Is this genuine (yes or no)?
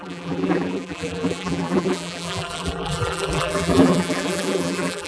no